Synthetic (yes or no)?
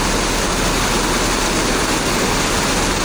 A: no